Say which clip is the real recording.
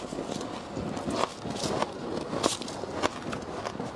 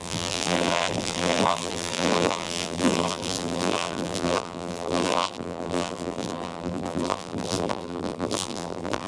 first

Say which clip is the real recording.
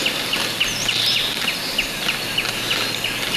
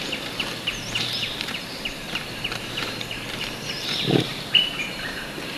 first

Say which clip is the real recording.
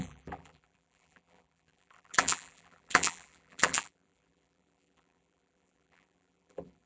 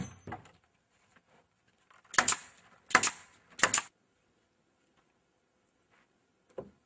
second